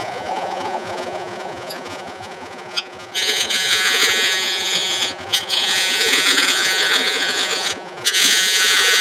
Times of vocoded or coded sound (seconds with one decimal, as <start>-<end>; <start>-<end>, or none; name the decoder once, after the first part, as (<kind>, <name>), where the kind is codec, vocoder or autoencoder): 0.0-9.0 (vocoder, Vocos)